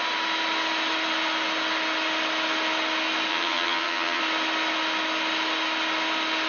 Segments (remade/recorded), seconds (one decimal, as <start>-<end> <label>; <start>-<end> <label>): 0.0-3.3 recorded; 3.3-4.2 remade; 4.2-6.5 recorded